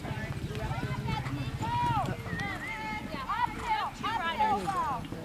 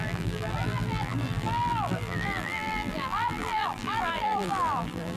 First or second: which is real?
first